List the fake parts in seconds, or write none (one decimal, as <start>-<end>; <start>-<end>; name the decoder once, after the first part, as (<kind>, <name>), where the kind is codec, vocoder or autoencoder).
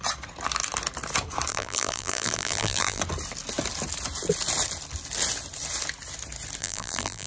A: 1.5-3.0 (vocoder, BigVGAN v2); 6.6-7.3